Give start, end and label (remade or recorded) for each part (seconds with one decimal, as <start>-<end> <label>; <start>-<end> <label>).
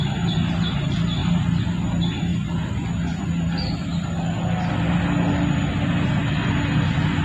0.0-7.2 recorded